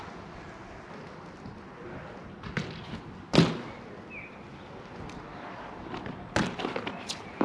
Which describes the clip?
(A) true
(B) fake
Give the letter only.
A